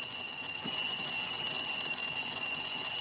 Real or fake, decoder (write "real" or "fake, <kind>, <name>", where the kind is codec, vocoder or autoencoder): fake, vocoder, Vocos